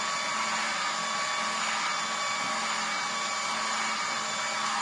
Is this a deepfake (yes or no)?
no